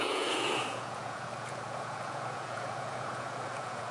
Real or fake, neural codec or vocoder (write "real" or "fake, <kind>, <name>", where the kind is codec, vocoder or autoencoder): fake, vocoder, Vocos